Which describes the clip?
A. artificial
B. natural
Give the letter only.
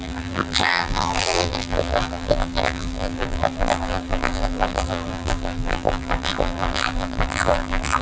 A